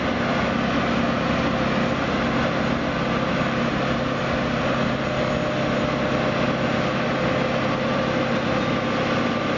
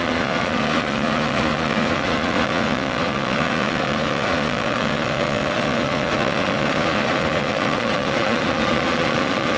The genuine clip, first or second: first